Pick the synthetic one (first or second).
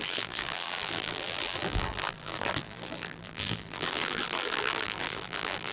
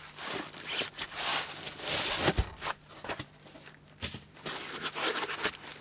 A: first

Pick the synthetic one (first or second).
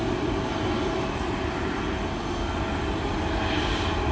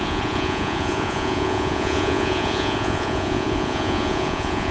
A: second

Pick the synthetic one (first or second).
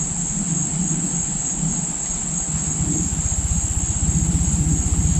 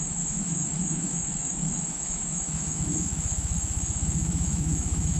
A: second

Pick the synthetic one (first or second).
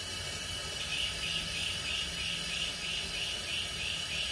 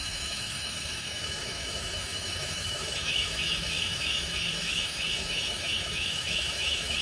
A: second